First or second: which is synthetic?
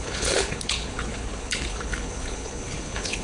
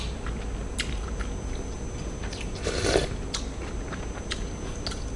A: first